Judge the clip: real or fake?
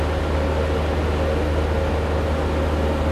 real